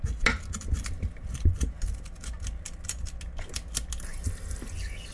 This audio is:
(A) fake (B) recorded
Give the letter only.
B